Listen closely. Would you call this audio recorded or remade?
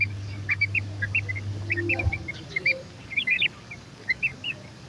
remade